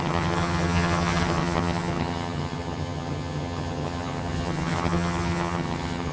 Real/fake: fake